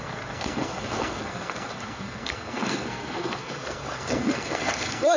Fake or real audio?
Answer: fake